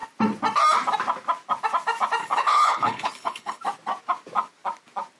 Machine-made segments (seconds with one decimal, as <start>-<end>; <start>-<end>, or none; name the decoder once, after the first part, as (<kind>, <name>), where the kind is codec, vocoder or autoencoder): 2.2-3.6 (codec, HILCodec)